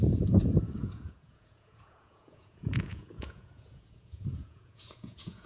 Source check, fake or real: fake